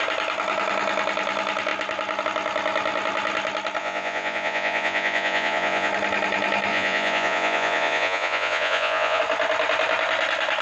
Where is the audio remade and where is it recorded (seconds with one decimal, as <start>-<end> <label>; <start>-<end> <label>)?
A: 0.0-3.8 recorded; 3.8-5.9 remade; 5.9-6.7 recorded; 6.7-9.2 remade; 9.2-10.6 recorded